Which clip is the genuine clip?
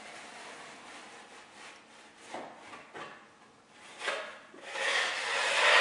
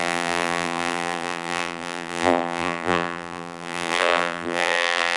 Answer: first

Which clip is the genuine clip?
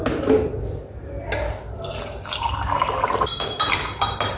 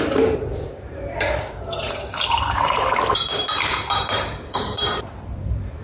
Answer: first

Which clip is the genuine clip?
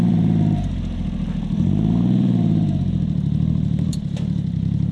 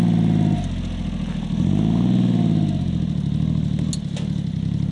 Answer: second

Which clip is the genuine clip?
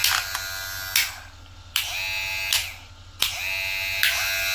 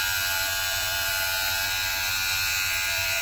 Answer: first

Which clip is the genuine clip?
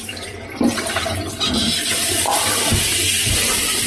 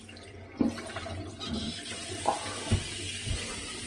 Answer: second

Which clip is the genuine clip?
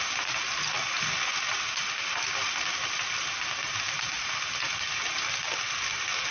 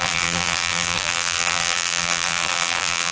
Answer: first